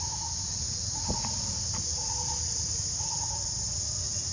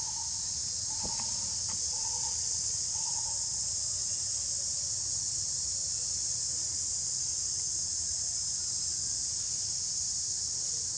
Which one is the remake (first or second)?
second